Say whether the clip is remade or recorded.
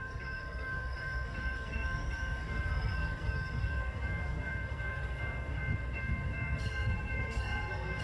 remade